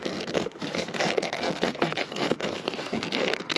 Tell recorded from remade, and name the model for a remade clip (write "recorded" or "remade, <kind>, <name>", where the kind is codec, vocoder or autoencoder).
remade, codec, SNAC